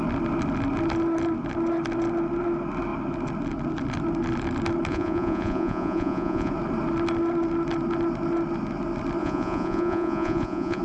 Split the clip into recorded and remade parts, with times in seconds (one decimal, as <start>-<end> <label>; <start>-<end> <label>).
0.0-4.9 recorded; 4.9-6.5 remade; 6.5-9.2 recorded; 9.2-10.8 remade